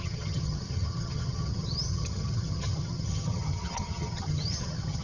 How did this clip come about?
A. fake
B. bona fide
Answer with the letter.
A